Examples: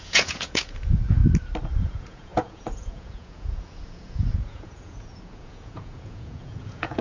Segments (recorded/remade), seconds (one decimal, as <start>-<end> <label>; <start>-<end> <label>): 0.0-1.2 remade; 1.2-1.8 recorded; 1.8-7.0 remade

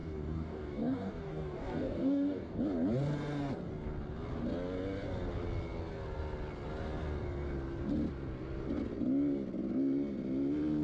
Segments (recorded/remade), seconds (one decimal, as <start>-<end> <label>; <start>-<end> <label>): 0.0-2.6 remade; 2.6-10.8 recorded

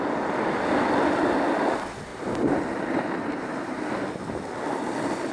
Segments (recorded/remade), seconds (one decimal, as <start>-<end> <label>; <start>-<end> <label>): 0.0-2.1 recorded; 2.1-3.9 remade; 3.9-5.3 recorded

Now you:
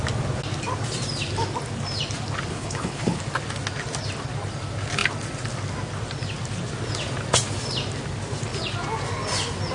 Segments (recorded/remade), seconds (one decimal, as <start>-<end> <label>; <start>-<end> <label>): 0.0-2.5 recorded; 2.5-3.2 remade; 3.2-9.7 recorded